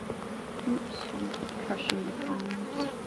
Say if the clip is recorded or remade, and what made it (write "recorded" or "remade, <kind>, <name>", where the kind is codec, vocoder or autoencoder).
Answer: recorded